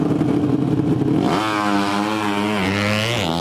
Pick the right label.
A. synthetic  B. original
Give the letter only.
B